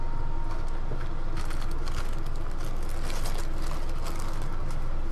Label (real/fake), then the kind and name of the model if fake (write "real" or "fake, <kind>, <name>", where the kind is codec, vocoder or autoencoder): real